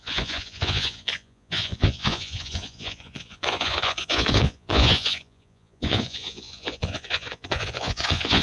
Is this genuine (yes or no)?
no